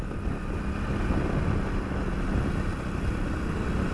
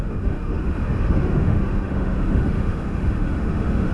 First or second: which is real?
first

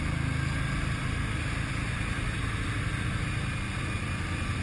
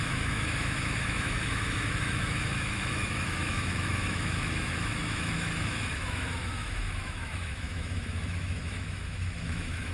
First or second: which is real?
first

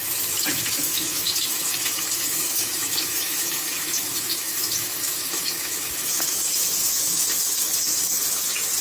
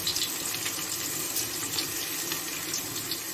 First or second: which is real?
second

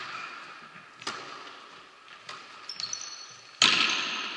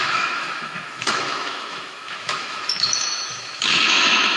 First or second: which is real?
first